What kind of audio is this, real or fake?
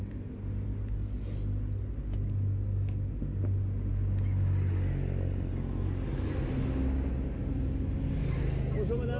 real